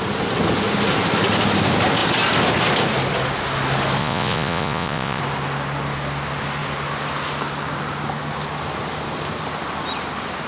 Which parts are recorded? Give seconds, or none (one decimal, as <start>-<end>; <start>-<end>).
0.0-4.0; 5.2-10.5